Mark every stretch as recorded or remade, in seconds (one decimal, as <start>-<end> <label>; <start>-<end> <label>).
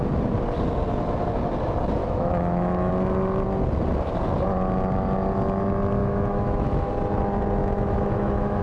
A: 0.0-2.0 recorded; 2.0-2.9 remade; 2.9-6.0 recorded; 6.0-6.9 remade; 6.9-7.6 recorded; 7.6-8.6 remade